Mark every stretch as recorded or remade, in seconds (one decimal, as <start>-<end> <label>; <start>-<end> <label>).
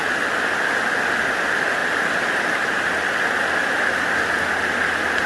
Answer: 0.0-5.3 recorded